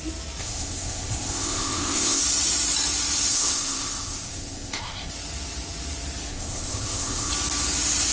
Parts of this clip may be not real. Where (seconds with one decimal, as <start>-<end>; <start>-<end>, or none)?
0.4-2.2; 3.3-5.1; 6.3-7.3